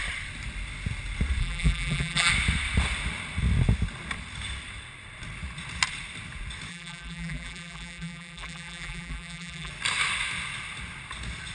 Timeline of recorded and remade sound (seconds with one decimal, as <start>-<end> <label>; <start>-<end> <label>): 0.0-1.4 recorded; 1.4-2.3 remade; 2.3-6.7 recorded; 6.7-9.7 remade; 9.7-11.5 recorded